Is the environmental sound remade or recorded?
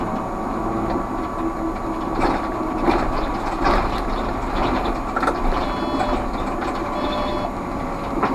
recorded